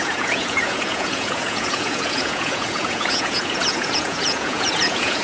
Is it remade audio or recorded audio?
remade